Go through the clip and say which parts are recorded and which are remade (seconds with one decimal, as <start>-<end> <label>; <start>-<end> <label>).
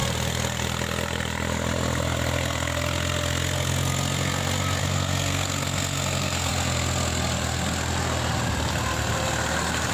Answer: 0.0-4.8 recorded; 4.8-6.5 remade; 6.5-9.9 recorded